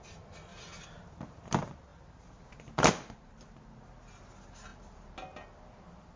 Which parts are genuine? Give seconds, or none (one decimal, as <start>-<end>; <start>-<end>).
0.0-6.2